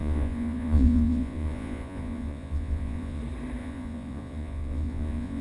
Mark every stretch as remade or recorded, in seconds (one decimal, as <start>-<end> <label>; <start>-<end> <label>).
0.0-3.2 remade; 3.2-3.6 recorded; 3.6-5.4 remade